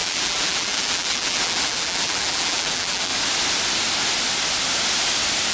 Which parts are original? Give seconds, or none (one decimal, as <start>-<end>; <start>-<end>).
3.1-5.5